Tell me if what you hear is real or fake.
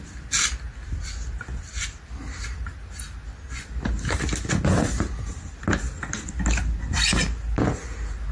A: real